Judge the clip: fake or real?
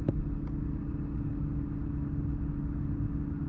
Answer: real